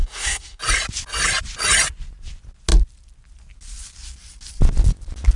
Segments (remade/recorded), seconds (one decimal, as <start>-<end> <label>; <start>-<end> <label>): 0.0-0.6 remade; 0.6-5.4 recorded